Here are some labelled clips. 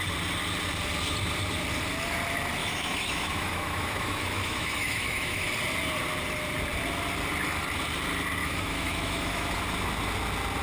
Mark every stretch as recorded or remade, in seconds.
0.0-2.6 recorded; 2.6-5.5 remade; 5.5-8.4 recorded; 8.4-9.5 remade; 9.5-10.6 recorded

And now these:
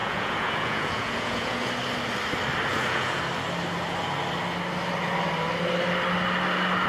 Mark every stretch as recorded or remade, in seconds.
0.0-1.7 remade; 1.7-2.7 recorded; 2.7-3.2 remade; 3.2-6.9 recorded

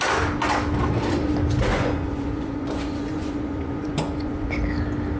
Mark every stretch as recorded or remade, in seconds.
0.0-1.7 recorded; 1.7-4.5 remade; 4.5-5.2 recorded

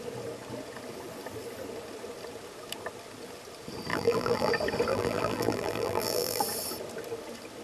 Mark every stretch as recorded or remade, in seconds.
0.0-3.9 recorded; 3.9-4.5 remade; 4.5-4.9 recorded; 4.9-6.4 remade; 6.4-7.6 recorded

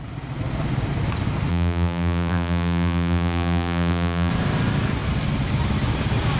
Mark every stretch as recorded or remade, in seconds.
0.0-1.5 recorded; 1.5-4.3 remade; 4.3-6.4 recorded

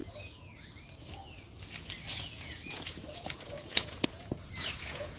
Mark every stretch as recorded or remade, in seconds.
0.0-0.7 remade; 0.7-2.1 recorded; 2.1-5.2 remade

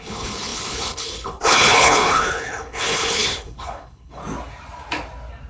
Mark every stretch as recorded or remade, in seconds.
0.0-4.2 remade; 4.2-5.5 recorded